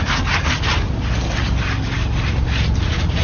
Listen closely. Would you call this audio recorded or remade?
recorded